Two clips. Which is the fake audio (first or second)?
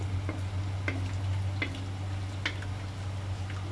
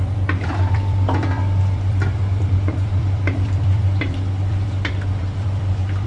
second